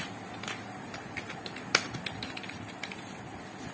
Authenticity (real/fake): fake